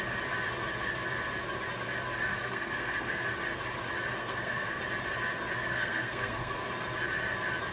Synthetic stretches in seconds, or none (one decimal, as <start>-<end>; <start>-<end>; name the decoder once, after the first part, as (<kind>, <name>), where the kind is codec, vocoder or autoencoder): 2.3-3.2 (codec, SNAC); 4.2-4.8; 5.6-6.6